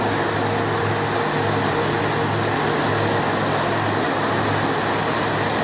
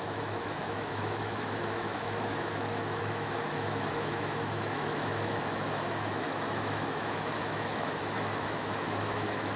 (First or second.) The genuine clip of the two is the first